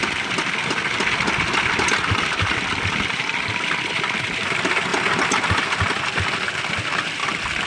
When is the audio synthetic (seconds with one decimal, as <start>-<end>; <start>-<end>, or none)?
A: none